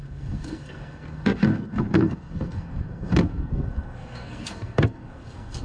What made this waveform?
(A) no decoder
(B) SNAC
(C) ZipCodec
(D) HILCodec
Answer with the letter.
B